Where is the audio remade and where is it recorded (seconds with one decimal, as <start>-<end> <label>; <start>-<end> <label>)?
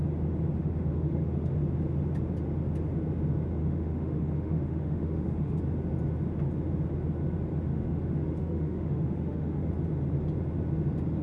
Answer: 0.0-0.6 recorded; 0.6-1.5 remade; 1.5-3.6 recorded; 3.6-5.6 remade; 5.6-7.7 recorded; 7.7-9.7 remade; 9.7-11.2 recorded